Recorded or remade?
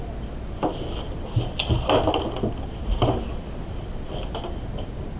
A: recorded